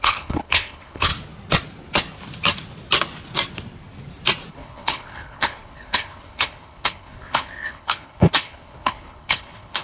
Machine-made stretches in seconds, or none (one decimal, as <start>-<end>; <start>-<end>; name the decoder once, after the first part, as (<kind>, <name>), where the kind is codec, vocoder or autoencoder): 0.0-1.1 (codec, HILCodec); 4.5-9.8